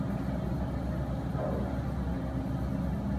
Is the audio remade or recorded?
recorded